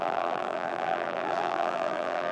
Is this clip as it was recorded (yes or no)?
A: no